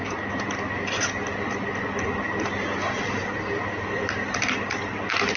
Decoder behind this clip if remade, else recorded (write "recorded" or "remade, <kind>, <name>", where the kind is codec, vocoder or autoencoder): recorded